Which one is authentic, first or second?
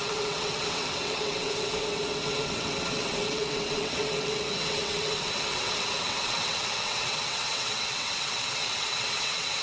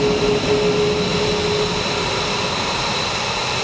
second